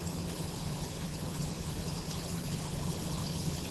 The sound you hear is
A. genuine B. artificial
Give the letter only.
B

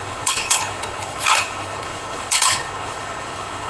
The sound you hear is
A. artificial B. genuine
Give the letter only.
A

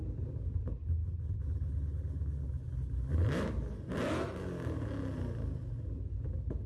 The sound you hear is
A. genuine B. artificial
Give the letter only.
A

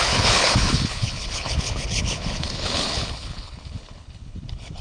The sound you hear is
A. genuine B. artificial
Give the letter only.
B